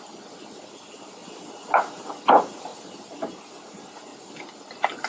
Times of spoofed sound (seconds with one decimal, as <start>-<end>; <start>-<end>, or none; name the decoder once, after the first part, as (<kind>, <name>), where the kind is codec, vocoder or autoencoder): none